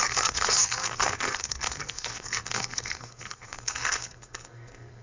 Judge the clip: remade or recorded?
remade